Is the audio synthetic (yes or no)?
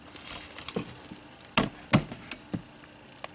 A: no